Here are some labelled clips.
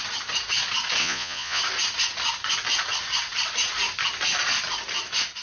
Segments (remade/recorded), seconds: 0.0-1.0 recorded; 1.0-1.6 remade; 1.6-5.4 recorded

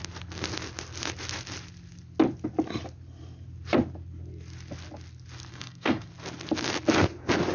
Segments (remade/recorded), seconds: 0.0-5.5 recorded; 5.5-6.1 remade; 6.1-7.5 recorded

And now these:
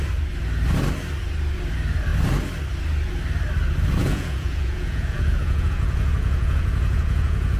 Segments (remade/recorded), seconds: 0.0-4.0 recorded; 4.0-7.6 remade

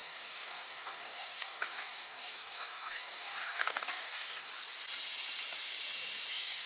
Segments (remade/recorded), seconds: 0.0-4.5 remade; 4.5-6.3 recorded; 6.3-6.7 remade

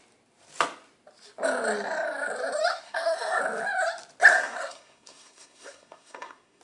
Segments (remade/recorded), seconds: 0.0-2.7 recorded; 2.7-3.4 remade; 3.4-4.3 recorded; 4.3-6.6 remade